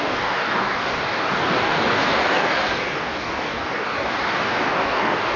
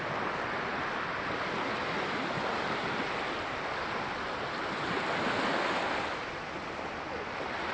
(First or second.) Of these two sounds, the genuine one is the second